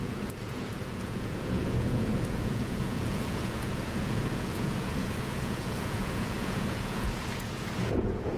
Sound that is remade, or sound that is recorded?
remade